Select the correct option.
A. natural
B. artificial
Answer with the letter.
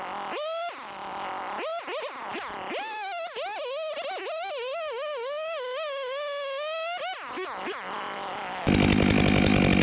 A